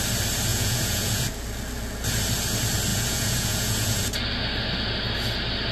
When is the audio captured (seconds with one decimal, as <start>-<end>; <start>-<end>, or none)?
0.0-0.5; 1.3-2.9; 4.0-5.7